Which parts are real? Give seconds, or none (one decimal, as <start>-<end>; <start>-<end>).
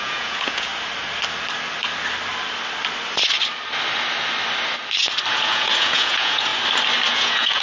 0.7-5.3; 6.5-7.1